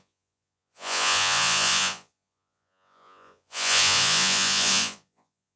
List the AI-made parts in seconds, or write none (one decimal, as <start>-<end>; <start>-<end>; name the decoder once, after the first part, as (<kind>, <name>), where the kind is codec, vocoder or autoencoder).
0.0-5.6 (vocoder, Vocos)